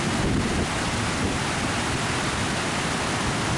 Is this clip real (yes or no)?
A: yes